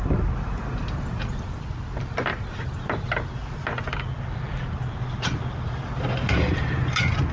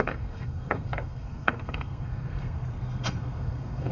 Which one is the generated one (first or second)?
second